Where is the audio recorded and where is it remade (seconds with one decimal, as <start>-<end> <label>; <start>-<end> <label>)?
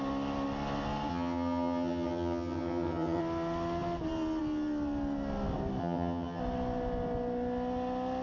0.0-1.1 recorded; 1.1-3.2 remade; 3.2-5.8 recorded; 5.8-6.4 remade; 6.4-8.2 recorded